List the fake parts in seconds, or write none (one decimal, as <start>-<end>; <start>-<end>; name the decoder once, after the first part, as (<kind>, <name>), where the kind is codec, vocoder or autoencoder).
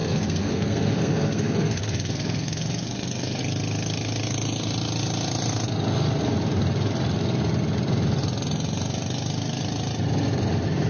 0.0-3.4 (codec, SNAC)